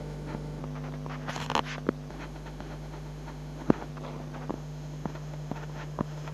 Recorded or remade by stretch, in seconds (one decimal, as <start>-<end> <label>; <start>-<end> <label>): 0.0-0.6 remade; 0.6-2.1 recorded; 2.1-3.9 remade; 3.9-4.5 recorded; 4.5-6.3 remade